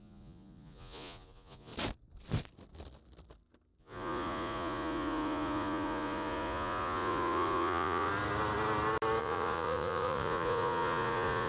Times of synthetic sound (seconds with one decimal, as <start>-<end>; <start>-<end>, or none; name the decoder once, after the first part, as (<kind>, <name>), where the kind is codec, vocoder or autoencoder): 0.0-1.7 (vocoder, Vocos); 3.8-8.1; 9.2-11.5